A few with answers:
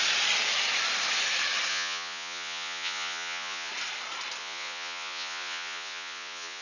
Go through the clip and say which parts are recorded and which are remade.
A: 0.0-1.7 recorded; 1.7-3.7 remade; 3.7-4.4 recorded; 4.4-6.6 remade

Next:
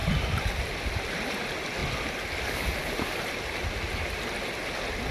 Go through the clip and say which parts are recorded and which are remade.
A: 0.0-5.1 recorded

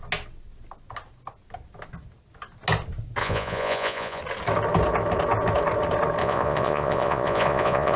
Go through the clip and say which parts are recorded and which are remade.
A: 0.0-3.2 recorded; 3.2-4.2 remade; 4.2-6.2 recorded; 6.2-8.0 remade